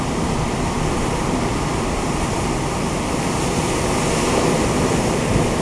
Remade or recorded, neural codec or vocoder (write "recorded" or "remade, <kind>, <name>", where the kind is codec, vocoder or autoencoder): recorded